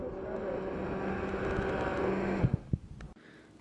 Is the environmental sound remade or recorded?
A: recorded